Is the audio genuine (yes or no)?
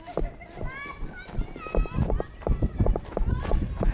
yes